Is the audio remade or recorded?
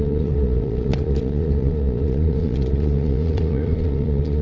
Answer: remade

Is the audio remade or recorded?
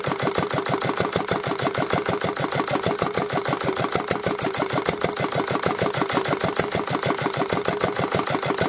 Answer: recorded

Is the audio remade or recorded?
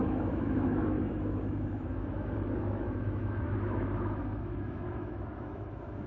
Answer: remade